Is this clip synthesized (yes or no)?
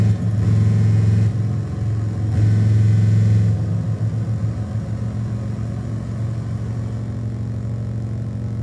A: no